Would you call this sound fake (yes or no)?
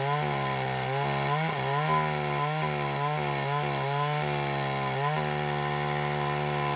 no